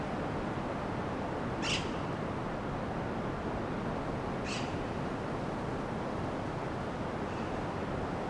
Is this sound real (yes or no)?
yes